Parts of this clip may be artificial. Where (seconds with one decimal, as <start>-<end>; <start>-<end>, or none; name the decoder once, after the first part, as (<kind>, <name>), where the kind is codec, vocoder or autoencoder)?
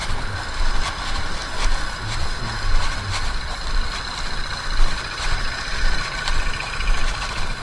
none